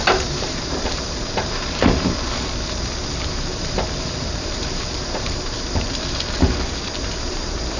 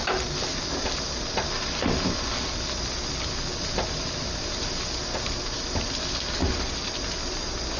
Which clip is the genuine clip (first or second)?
second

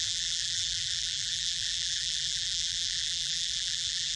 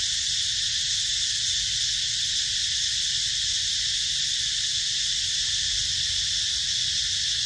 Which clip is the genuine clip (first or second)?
second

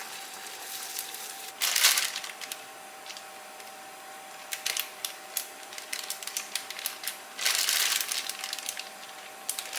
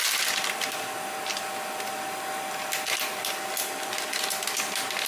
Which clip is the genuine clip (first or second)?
second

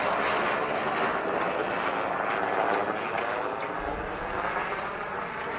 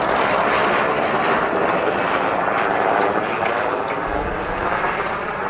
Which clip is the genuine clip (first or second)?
first